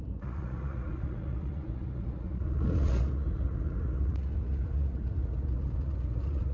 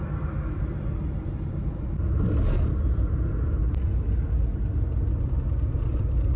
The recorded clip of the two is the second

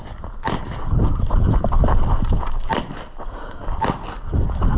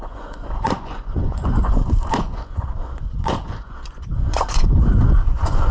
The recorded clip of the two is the first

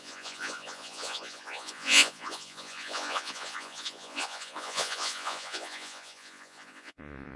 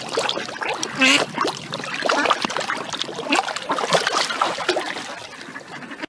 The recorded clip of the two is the second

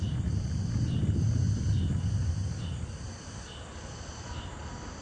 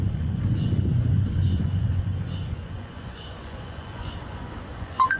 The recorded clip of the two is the first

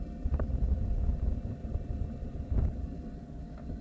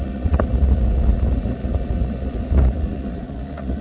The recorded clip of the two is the first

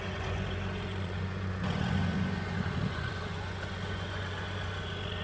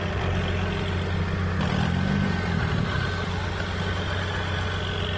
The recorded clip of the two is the second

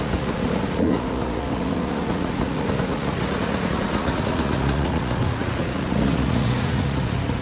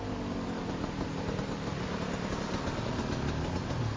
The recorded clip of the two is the second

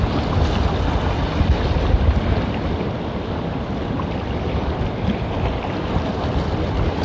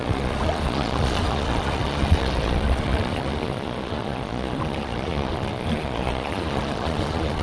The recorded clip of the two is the first